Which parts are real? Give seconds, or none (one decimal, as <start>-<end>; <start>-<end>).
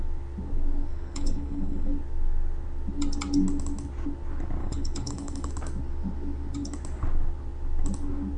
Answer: 0.0-0.9; 1.9-4.6; 5.5-8.4